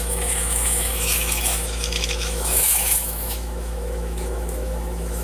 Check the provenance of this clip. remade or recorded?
remade